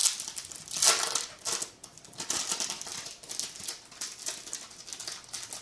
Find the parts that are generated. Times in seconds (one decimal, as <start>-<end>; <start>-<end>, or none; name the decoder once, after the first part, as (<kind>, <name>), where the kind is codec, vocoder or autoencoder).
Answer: none